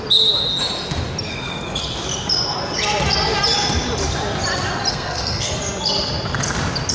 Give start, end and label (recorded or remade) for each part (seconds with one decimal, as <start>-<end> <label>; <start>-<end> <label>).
0.0-1.3 recorded; 1.3-1.8 remade; 1.8-4.9 recorded; 4.9-5.6 remade; 5.6-6.9 recorded